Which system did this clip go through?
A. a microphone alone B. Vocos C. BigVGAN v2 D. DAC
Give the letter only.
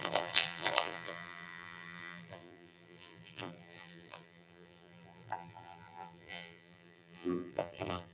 C